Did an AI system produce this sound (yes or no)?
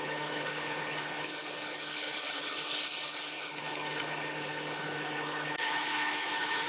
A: yes